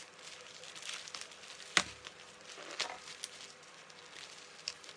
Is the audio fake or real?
real